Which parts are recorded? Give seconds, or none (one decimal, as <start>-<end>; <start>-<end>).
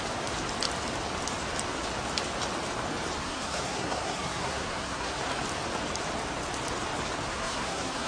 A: 0.0-3.2; 5.2-7.3